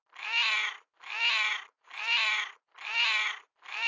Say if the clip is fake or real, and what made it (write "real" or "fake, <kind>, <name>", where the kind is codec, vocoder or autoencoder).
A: real